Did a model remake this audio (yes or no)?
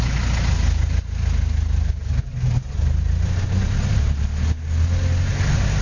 no